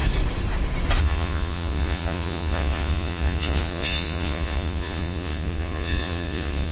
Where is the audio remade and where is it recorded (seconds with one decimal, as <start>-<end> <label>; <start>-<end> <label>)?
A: 0.0-1.0 recorded; 1.0-6.7 remade